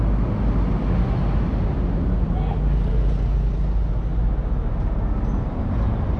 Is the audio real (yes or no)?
yes